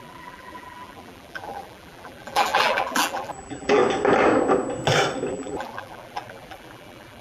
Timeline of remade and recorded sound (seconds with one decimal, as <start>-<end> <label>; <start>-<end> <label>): 0.0-3.8 remade; 3.8-5.3 recorded; 5.3-7.2 remade